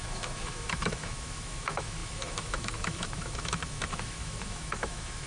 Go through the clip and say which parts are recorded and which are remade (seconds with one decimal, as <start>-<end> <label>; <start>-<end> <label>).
0.0-5.3 remade